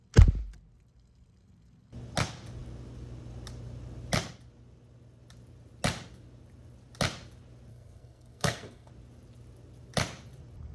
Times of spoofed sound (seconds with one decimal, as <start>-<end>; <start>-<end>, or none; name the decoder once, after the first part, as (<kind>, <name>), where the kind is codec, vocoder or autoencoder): 7.7-8.9 (codec, SNAC)